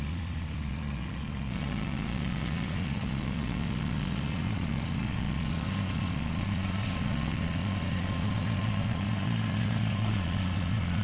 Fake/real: fake